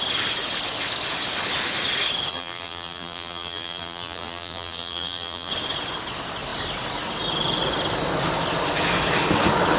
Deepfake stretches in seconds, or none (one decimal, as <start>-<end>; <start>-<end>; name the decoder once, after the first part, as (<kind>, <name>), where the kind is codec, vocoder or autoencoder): 2.3-5.5 (vocoder, BigVGAN v2)